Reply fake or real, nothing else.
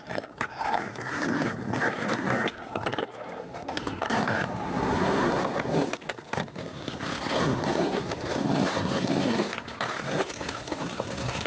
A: fake